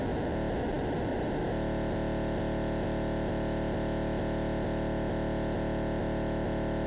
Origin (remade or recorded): recorded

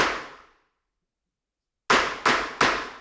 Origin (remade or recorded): recorded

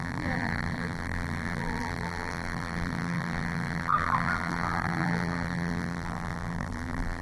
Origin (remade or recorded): remade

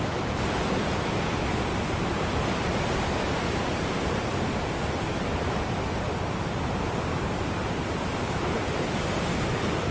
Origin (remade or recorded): recorded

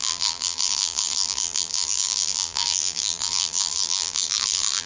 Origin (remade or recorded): remade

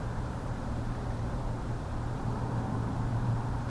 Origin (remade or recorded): remade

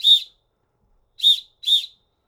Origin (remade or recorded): remade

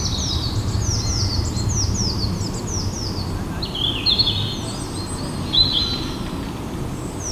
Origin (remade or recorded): recorded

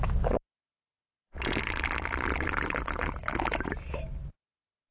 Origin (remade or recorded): recorded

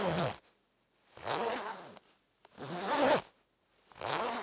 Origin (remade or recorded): recorded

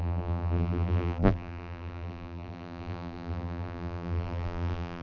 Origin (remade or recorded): remade